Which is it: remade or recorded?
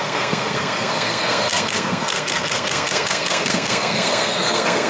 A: remade